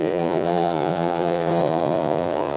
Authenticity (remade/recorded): remade